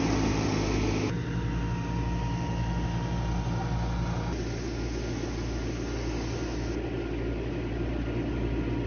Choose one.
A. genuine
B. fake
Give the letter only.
A